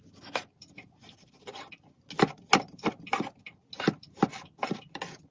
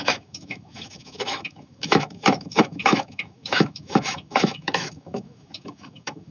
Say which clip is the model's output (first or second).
second